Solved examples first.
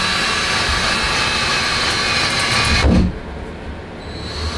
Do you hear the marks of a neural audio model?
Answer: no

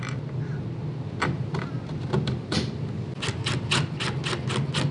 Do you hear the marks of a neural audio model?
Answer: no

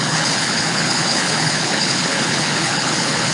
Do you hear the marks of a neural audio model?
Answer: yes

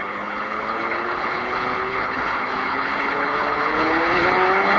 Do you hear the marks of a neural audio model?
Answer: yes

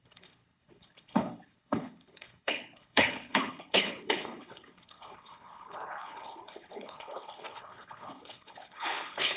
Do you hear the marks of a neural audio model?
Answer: yes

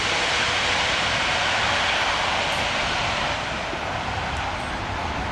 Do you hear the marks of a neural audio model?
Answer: no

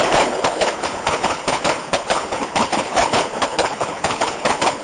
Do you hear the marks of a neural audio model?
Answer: yes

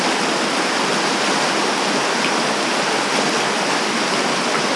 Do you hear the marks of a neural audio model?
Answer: no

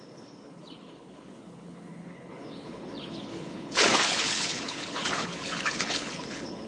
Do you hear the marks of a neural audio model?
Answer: yes